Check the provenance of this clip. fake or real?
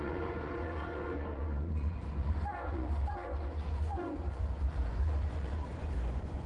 fake